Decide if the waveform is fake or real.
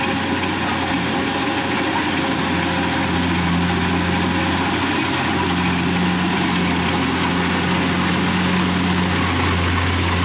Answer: real